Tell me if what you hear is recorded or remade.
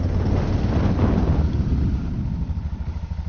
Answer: recorded